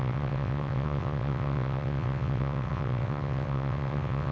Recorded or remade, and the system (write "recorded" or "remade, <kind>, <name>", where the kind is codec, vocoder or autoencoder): remade, vocoder, WaveNeXt